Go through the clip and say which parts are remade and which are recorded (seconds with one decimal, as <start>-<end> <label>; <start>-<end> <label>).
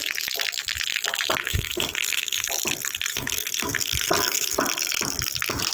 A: 0.0-1.4 recorded; 1.4-2.5 remade; 2.5-3.1 recorded; 3.1-4.6 remade; 4.6-5.7 recorded